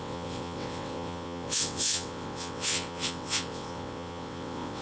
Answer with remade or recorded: remade